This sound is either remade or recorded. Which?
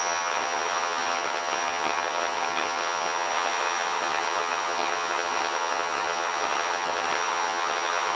remade